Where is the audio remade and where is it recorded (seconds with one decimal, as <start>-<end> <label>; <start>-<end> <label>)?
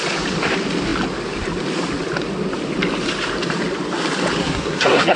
0.0-4.4 recorded; 4.4-5.2 remade